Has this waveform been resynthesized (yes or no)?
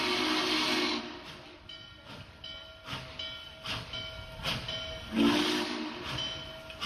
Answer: no